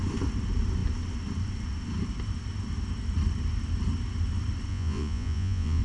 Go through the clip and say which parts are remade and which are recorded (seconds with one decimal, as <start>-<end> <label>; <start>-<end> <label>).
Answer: 0.0-4.7 recorded; 4.7-5.8 remade